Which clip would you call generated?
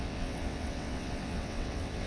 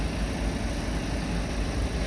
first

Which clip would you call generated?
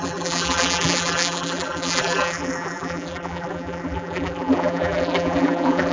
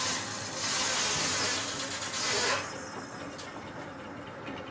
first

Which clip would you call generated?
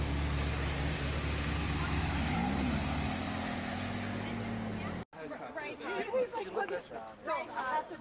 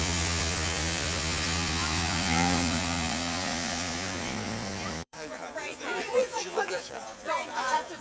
second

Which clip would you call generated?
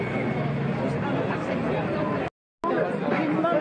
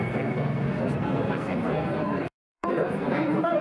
second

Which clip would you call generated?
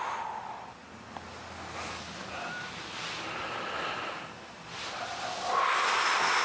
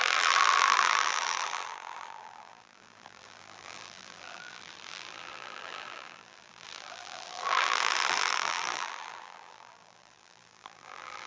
second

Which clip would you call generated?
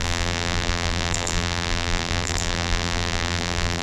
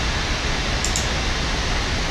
first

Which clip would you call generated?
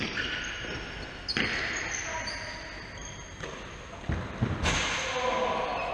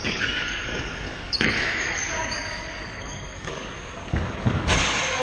second